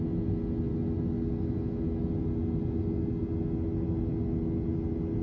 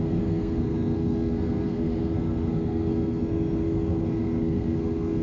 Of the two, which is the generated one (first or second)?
second